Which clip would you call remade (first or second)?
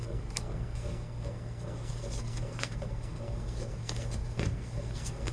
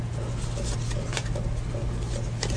first